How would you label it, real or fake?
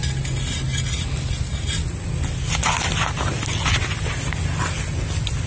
real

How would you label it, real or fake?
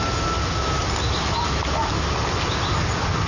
real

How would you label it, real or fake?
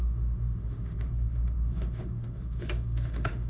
fake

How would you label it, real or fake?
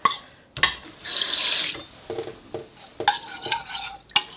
real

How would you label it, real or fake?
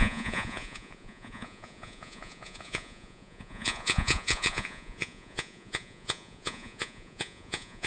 fake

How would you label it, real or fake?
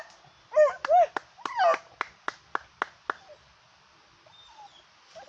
real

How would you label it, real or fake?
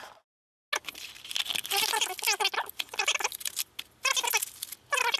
real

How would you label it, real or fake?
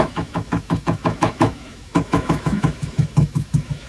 fake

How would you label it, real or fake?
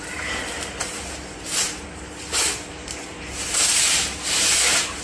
fake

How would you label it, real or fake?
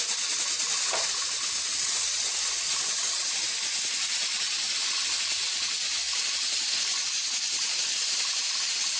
real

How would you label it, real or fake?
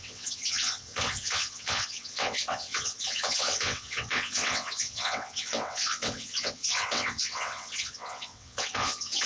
fake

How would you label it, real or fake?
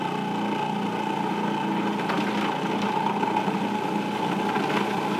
real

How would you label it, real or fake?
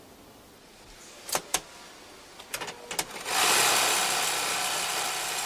real